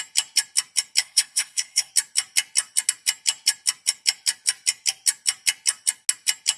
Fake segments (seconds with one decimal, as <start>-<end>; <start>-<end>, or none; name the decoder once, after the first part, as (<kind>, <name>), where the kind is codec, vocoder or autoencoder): 1.0-1.9 (codec, SNAC)

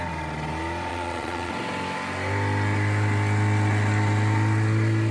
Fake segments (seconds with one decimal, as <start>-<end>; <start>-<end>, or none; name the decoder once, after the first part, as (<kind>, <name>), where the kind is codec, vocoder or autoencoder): 0.9-1.5 (vocoder, Vocos)

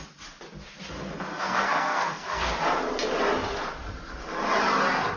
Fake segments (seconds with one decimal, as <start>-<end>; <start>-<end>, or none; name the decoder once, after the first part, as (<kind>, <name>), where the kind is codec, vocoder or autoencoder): 1.3-2.5 (codec, SNAC)